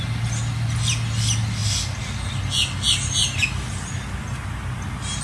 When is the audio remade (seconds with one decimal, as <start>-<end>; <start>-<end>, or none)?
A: none